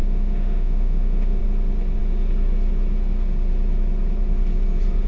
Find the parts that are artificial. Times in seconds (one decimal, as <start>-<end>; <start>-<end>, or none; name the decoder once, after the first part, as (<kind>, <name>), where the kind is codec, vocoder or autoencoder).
0.0-1.4 (autoencoder, DAC-VAE)

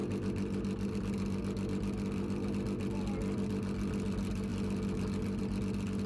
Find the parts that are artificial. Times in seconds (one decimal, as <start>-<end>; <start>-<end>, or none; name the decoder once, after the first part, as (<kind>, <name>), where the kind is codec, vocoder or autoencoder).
none

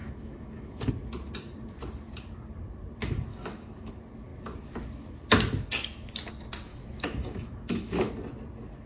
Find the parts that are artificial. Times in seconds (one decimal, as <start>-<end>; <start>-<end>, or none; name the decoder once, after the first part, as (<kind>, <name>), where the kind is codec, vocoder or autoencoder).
0.0-0.9 (autoencoder, DAC-VAE); 3.3-3.9; 6.7-8.1